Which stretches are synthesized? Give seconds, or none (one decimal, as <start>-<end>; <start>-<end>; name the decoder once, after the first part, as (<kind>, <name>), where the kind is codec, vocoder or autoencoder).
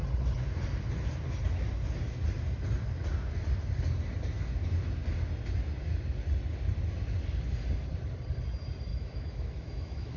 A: 8.9-10.2 (autoencoder, DAC-VAE)